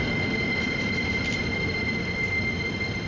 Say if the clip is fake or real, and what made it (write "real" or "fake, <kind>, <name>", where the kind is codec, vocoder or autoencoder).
fake, vocoder, BigVGAN v2